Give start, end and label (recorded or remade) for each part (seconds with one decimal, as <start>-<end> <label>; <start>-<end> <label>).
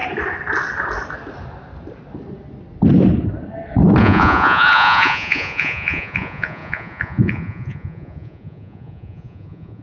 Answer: 0.0-4.0 recorded; 4.0-9.8 remade